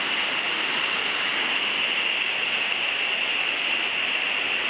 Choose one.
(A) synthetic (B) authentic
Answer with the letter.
B